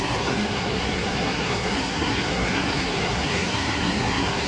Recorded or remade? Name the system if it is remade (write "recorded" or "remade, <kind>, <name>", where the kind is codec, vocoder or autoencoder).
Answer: remade, codec, SNAC